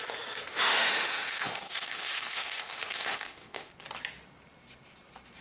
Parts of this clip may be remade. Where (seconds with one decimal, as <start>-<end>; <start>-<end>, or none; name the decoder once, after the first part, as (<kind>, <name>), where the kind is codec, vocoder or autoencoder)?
0.5-3.7 (autoencoder, DAC-VAE)